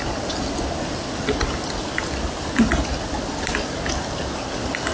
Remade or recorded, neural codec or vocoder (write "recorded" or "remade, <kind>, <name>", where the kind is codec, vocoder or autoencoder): recorded